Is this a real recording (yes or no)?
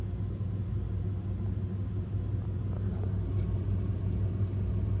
yes